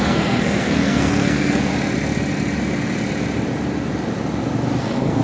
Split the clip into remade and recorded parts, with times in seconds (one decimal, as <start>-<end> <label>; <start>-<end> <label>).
0.0-1.7 remade; 1.7-4.8 recorded; 4.8-5.2 remade